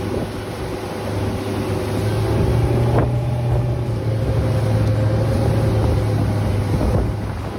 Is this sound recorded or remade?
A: recorded